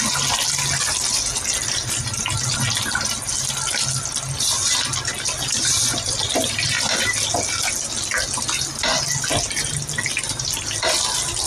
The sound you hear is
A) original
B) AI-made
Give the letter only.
A